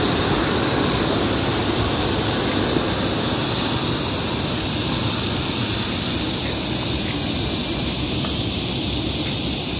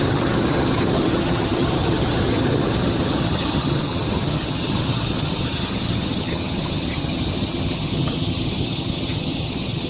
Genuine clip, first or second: first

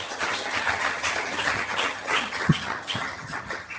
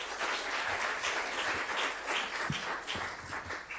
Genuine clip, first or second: second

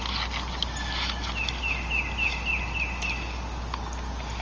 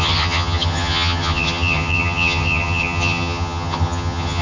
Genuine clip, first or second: first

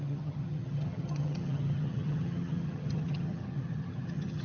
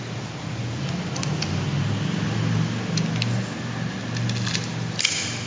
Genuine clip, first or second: second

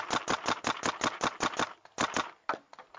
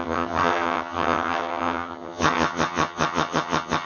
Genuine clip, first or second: first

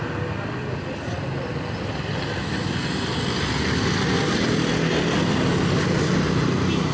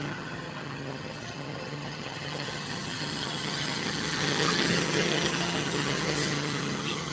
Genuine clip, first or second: first